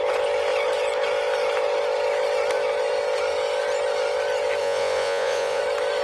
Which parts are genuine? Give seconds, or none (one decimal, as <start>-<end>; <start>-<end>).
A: 0.0-4.6; 5.6-6.0